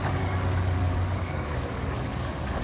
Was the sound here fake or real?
fake